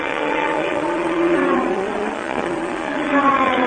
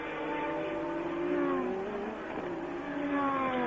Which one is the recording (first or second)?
second